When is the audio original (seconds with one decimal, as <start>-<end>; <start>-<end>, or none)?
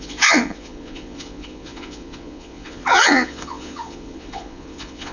none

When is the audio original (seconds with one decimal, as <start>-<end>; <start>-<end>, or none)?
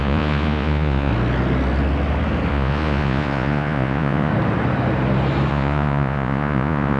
1.1-2.5; 4.3-5.5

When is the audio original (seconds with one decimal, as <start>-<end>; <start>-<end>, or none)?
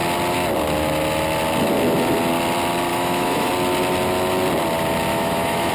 0.0-2.9; 3.5-5.1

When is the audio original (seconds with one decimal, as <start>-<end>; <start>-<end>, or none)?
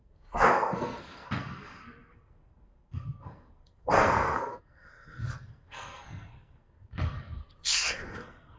none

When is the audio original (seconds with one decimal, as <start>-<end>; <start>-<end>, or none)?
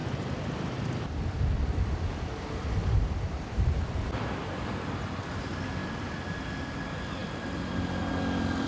0.8-2.8; 5.1-5.8; 6.4-8.7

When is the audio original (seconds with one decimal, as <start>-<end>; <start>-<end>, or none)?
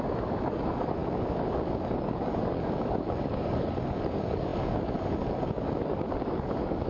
none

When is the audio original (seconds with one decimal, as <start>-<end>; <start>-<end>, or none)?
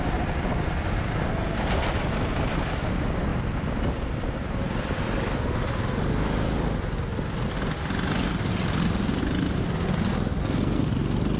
0.0-10.4; 10.9-11.4